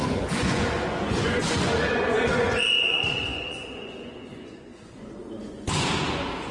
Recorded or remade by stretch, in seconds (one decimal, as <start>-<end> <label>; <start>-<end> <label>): 0.0-6.5 remade